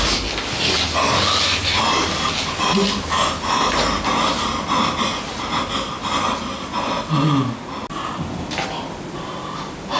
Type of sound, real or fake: real